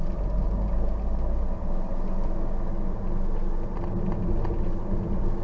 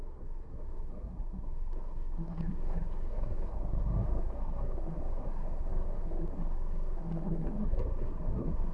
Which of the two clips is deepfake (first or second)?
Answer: second